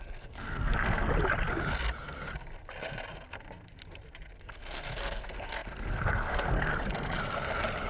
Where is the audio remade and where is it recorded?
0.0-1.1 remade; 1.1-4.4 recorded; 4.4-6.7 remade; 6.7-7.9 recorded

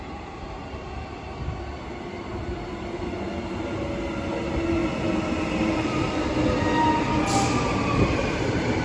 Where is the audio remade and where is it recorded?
0.0-8.8 recorded

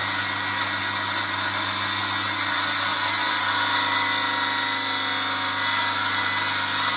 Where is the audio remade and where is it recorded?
0.0-7.0 recorded

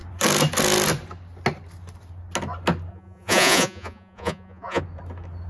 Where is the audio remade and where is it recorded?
0.0-2.9 recorded; 2.9-4.8 remade; 4.8-5.5 recorded

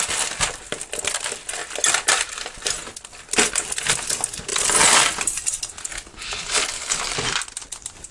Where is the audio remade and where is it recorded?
0.0-6.1 recorded; 6.1-6.9 remade; 6.9-8.1 recorded

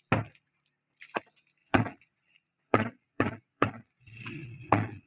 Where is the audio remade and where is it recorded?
0.0-1.6 recorded; 1.6-5.1 remade